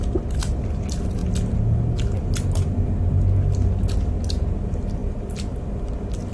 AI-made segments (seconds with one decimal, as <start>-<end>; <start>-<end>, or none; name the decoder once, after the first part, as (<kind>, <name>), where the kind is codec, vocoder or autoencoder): 5.0-5.6 (vocoder, BigVGAN v2)